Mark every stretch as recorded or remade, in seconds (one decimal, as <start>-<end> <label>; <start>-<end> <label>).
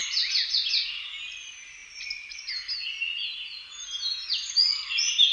0.0-0.6 remade; 0.6-1.8 recorded; 1.8-2.5 remade; 2.5-5.3 recorded